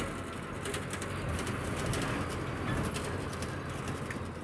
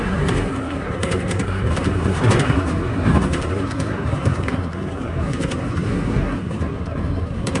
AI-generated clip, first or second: second